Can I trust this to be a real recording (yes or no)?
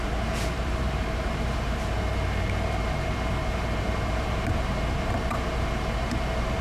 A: no